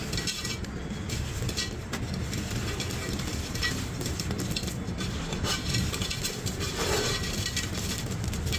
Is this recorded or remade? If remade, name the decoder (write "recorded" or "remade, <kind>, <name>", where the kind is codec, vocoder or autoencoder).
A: recorded